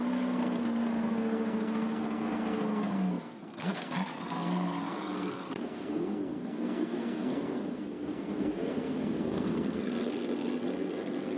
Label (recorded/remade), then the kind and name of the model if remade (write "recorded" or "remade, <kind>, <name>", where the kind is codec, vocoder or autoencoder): remade, codec, SNAC